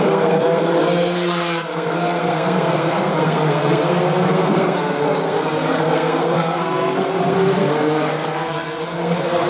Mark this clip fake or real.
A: fake